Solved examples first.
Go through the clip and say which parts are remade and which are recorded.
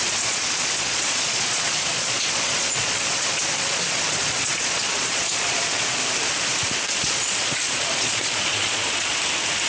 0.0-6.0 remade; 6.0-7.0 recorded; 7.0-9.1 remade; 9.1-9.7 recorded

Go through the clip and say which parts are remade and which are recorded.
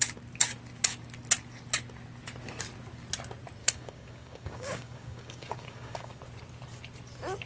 0.0-3.6 recorded; 3.6-6.2 remade; 6.2-7.5 recorded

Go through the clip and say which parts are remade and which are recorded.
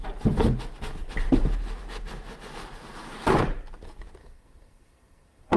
0.0-4.2 recorded; 4.2-5.6 remade